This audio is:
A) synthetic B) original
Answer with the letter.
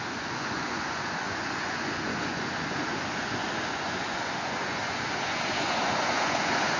A